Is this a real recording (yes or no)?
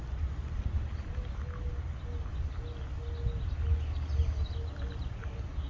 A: yes